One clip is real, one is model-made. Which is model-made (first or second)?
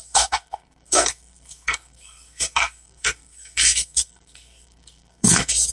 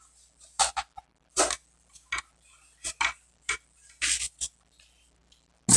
first